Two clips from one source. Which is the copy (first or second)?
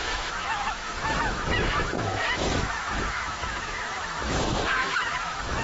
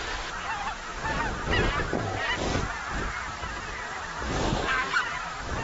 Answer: first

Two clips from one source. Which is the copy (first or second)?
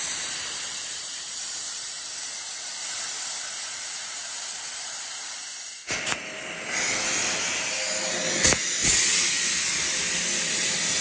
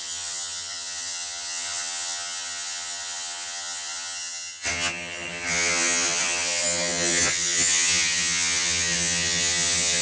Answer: second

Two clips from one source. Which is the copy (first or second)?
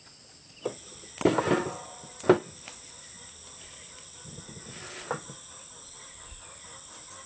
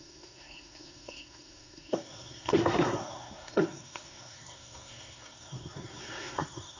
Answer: second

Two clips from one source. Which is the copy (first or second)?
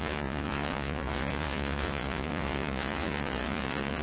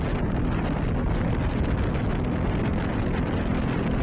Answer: first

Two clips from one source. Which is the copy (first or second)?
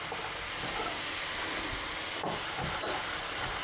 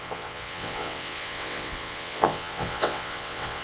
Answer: second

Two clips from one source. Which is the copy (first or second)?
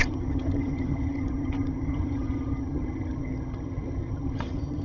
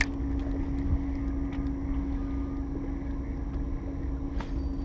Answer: first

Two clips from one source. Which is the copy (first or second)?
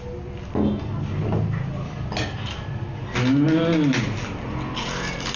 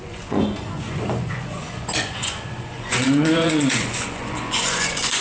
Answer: second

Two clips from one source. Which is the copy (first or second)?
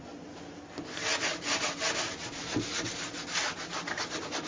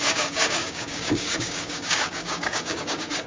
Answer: second